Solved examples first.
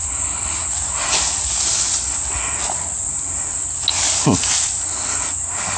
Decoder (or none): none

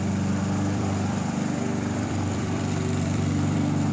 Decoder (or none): vocoder, BigVGAN v2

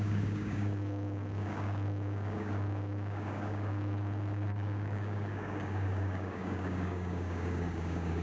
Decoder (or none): codec, DAC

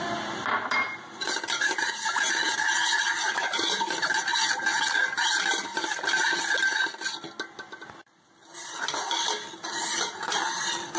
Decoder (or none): none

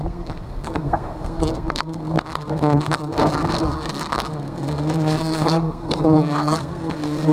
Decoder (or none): codec, SNAC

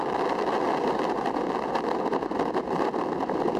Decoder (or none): none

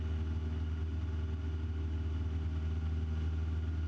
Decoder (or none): none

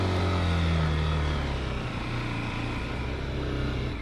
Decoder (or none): none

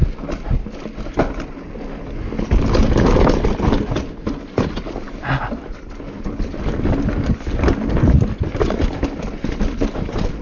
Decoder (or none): none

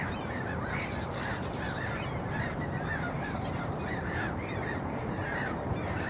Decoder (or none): vocoder, BigVGAN v2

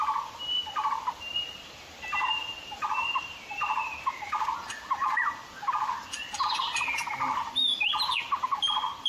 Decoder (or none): none